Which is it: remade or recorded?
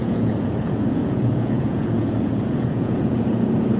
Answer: remade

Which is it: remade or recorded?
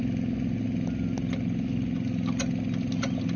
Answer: recorded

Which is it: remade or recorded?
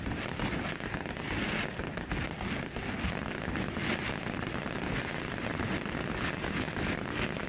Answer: recorded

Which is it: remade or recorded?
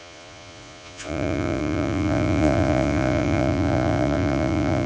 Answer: remade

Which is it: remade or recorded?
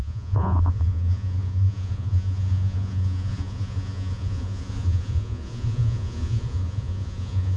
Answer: remade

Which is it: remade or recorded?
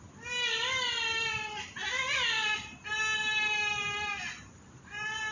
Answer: recorded